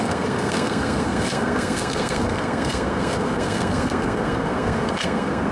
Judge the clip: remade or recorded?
remade